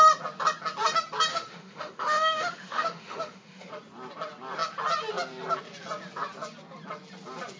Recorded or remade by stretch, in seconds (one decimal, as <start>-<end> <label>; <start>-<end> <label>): 0.0-1.3 recorded; 1.3-3.7 remade; 3.7-7.6 recorded